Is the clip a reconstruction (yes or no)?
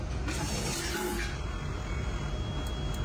no